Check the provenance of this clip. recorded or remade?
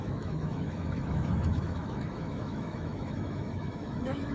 remade